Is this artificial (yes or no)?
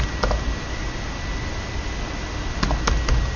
no